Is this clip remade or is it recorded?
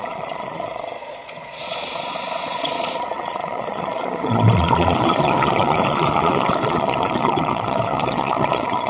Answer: remade